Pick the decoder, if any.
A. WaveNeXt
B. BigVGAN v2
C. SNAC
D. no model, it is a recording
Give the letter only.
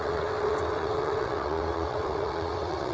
A